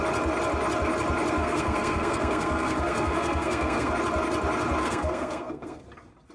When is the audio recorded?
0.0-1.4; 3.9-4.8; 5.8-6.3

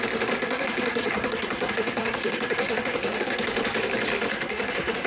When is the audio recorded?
0.0-0.4; 3.5-4.3

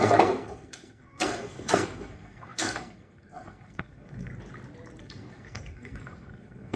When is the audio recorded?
4.3-5.0

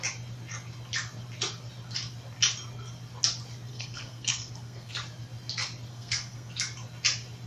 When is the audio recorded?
0.0-3.7; 4.9-5.9; 6.5-7.5

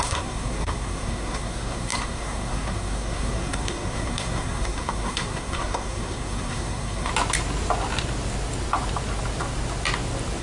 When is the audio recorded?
7.1-10.4